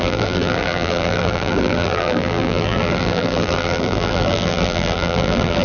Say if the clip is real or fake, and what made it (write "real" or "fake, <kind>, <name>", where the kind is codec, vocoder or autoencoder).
fake, vocoder, BigVGAN v2